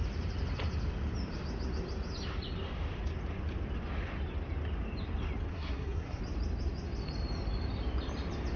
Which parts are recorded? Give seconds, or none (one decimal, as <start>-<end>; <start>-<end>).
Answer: 0.0-5.5; 6.2-8.6